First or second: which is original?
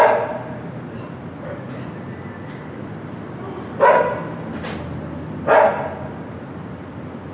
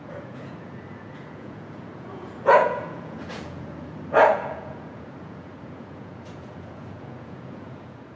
first